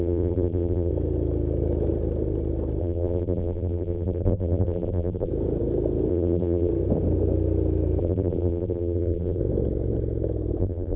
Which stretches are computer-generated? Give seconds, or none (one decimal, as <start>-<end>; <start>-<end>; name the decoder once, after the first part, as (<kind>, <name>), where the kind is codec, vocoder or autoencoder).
0.0-0.9 (vocoder, BigVGAN v2); 2.8-5.3; 6.1-6.7; 8.0-9.4; 10.6-11.0